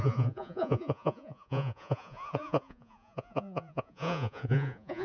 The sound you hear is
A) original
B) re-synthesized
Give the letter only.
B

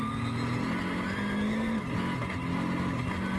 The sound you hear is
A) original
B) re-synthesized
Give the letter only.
A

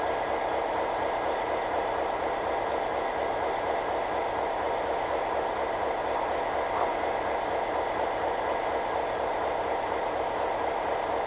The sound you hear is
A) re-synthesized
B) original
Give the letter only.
B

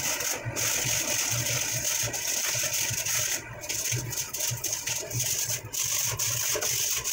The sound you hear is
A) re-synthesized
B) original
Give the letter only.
B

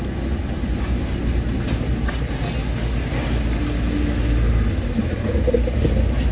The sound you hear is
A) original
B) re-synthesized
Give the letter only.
A